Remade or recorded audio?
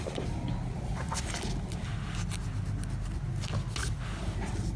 recorded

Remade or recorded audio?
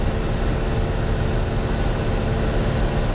recorded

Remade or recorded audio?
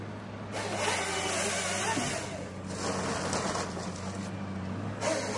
recorded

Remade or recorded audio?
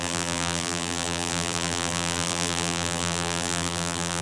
remade